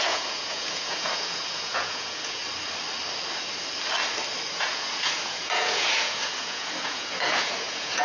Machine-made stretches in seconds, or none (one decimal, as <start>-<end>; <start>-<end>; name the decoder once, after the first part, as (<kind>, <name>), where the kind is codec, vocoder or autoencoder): 0.0-2.4 (vocoder, Vocos); 4.5-8.0